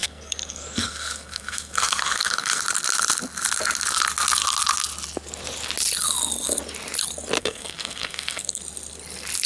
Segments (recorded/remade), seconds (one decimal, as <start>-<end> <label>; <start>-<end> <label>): 0.0-2.6 remade; 2.6-7.4 recorded; 7.4-8.6 remade; 8.6-9.5 recorded